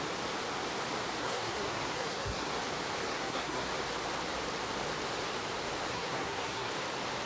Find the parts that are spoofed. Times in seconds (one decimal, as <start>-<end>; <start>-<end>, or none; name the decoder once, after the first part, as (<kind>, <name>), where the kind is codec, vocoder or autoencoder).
1.2-2.5 (codec, SNAC); 3.1-3.7; 5.9-6.7